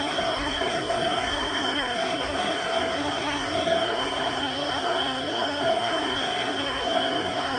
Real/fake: fake